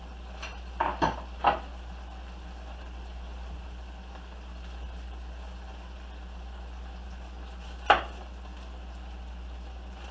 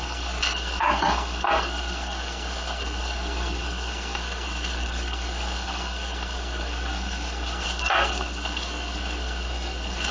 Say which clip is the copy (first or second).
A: second